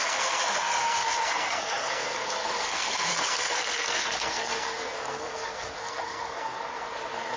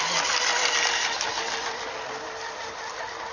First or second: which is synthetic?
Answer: first